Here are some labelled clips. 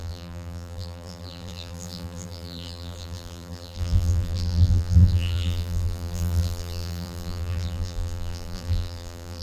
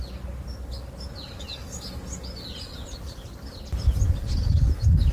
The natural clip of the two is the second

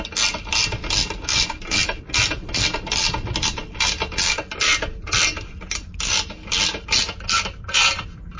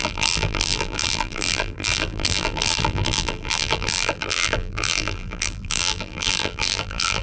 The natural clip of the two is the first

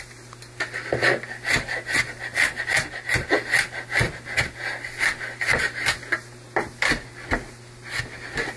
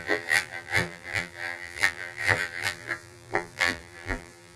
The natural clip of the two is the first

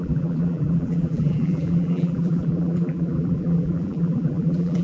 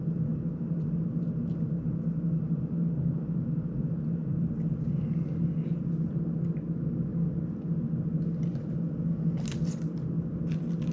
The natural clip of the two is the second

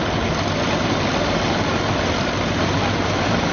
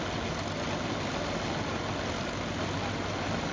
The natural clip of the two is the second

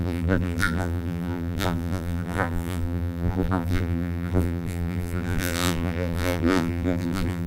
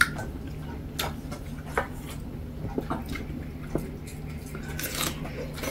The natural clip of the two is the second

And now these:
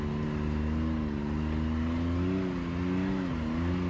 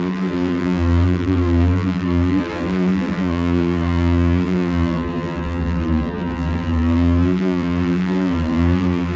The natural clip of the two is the first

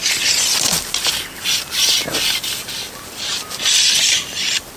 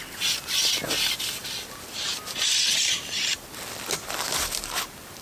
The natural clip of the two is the second